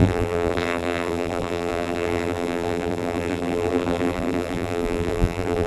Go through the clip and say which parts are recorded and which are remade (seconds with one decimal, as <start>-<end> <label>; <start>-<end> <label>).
0.0-5.7 remade